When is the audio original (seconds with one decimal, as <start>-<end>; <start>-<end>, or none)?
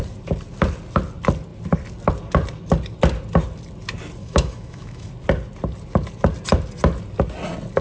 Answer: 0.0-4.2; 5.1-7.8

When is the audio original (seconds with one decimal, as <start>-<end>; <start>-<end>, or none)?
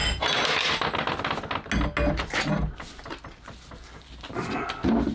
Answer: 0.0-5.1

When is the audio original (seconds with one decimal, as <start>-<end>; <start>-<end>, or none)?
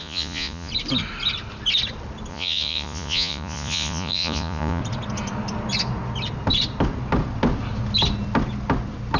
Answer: 0.7-2.3; 4.8-9.2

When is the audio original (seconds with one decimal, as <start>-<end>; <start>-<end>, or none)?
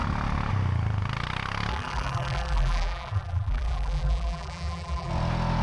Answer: 0.0-1.7; 5.1-5.6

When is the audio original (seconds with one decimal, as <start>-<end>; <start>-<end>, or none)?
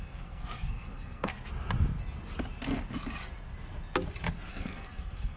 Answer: 1.3-4.5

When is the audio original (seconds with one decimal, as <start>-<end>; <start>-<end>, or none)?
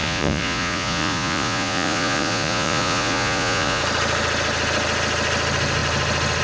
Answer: 3.8-6.4